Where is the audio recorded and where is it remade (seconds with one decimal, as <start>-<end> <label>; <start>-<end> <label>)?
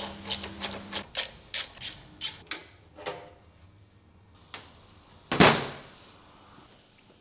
0.0-7.2 recorded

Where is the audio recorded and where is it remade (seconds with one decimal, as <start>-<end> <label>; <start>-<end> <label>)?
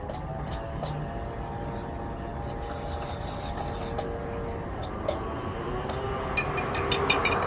0.0-7.5 recorded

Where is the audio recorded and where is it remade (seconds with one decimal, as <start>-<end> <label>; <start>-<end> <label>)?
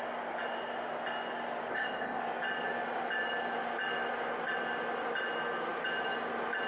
0.0-1.7 recorded; 1.7-2.2 remade; 2.2-6.7 recorded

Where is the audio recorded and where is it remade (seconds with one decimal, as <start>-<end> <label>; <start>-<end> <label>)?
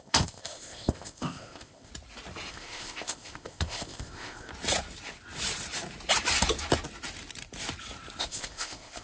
0.0-1.9 remade; 1.9-2.5 recorded; 2.5-4.5 remade; 4.5-8.2 recorded; 8.2-9.0 remade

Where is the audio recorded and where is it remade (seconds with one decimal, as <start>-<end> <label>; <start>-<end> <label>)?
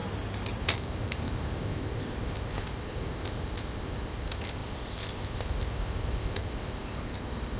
0.0-0.6 recorded; 0.6-7.6 remade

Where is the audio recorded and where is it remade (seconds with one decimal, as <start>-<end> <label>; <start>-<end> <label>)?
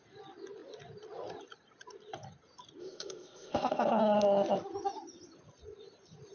0.0-2.8 recorded; 2.8-4.0 remade; 4.0-6.3 recorded